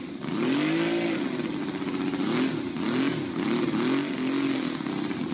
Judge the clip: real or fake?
real